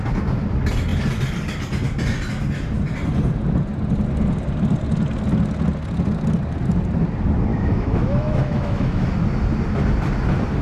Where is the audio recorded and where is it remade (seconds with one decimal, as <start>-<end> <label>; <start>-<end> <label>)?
0.0-7.5 recorded; 7.5-9.1 remade; 9.1-10.6 recorded